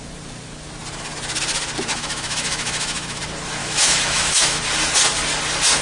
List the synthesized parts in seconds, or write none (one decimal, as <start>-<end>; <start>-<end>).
1.9-3.2; 3.6-4.6

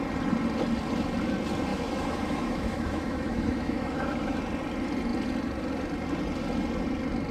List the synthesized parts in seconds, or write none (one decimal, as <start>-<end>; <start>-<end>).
1.7-4.4

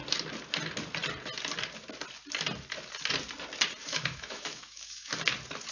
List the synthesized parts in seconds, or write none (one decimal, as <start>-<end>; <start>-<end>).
3.8-5.1

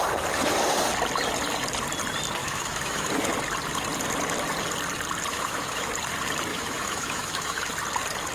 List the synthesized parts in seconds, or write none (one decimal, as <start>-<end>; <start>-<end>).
2.4-3.1; 5.3-5.9; 6.5-7.7

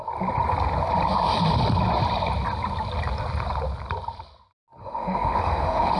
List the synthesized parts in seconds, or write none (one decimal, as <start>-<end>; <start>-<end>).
4.8-6.0

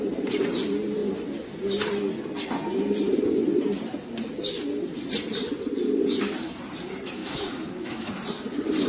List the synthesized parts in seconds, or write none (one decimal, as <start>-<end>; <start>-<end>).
7.2-8.1

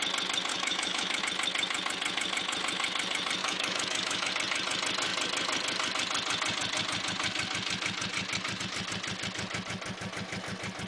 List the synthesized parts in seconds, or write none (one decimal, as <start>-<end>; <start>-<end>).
0.5-1.2; 3.4-4.3